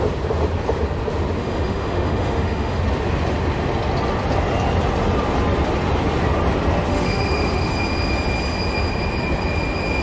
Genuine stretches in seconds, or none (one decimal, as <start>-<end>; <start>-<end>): 0.0-1.4; 2.8-6.9; 7.7-10.0